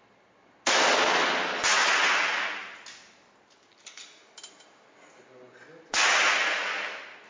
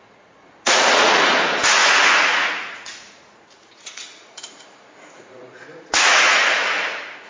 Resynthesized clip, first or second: second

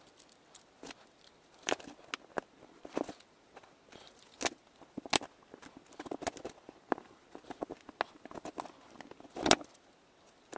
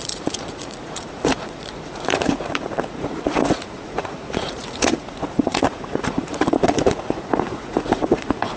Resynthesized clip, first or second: second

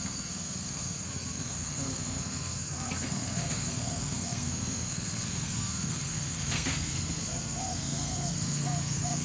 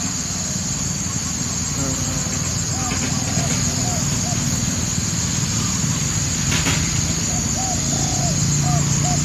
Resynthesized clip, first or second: first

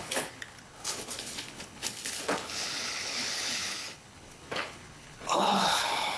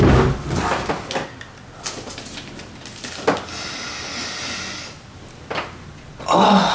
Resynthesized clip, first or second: first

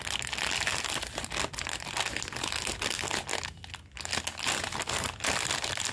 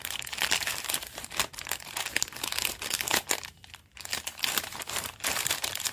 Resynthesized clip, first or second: second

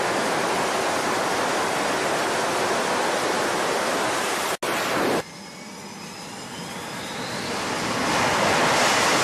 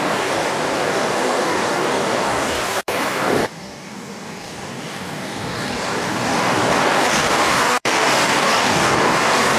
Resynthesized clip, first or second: second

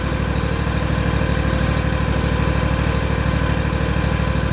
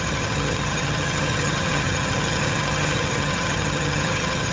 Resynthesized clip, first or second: second